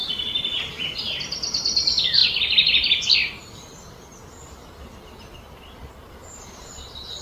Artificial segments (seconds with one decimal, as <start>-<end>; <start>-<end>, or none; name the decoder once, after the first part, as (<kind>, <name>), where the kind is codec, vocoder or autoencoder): 0.0-2.2 (vocoder, BigVGAN v2); 6.1-7.2